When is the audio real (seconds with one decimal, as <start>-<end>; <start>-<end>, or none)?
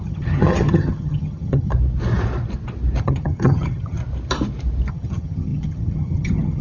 1.7-3.0; 4.0-4.9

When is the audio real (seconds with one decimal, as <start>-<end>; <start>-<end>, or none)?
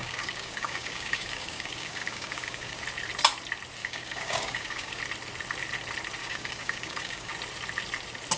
2.8-3.8; 5.0-6.2; 7.3-8.4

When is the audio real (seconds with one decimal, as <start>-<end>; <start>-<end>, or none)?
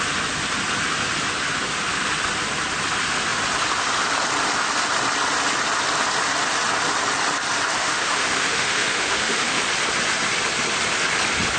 0.0-7.8; 9.6-11.6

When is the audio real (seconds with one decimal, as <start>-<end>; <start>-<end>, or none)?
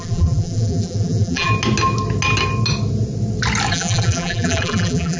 1.5-3.7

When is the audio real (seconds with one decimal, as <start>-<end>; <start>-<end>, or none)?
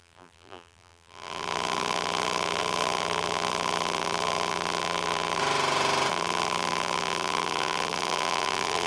5.4-6.1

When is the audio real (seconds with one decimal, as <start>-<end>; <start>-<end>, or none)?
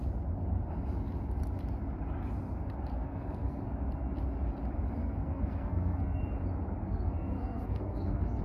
0.0-2.9; 3.6-5.0; 6.2-6.8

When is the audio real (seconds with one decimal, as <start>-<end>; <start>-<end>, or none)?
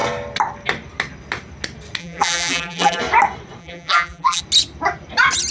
0.0-2.0; 3.0-3.6; 4.4-5.5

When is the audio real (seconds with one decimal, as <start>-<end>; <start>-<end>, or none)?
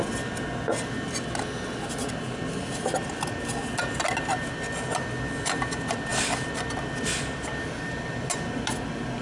0.0-9.2